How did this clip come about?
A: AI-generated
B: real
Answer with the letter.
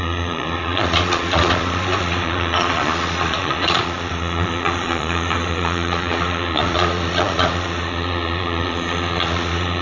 A